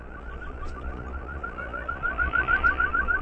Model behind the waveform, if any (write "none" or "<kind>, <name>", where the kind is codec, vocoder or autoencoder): vocoder, Vocos